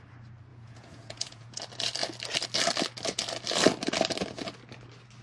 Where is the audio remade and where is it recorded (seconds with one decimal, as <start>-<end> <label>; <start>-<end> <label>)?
0.0-0.5 recorded; 0.5-1.6 remade; 1.6-5.2 recorded